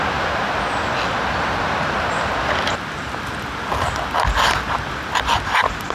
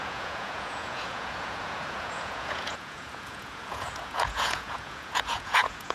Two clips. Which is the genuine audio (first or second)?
first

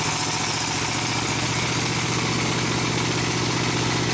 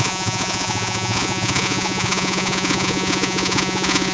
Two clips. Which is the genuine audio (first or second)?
first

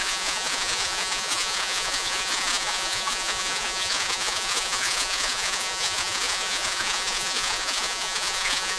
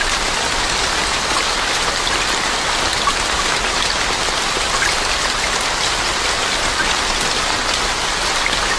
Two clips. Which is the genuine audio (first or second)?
second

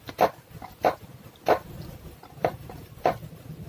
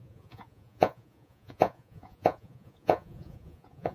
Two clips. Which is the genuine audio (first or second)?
first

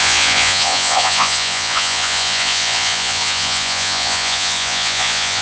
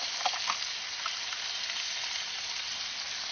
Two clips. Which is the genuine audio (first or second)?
second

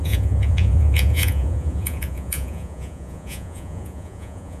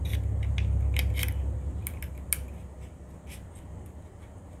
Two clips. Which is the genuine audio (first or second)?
second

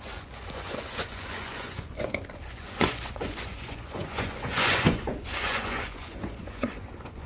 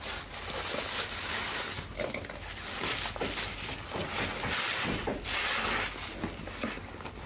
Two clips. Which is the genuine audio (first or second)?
second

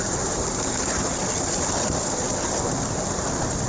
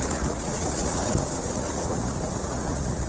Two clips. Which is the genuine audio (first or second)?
first